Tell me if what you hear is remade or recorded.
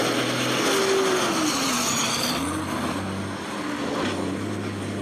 recorded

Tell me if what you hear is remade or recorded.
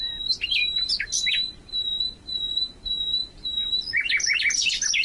recorded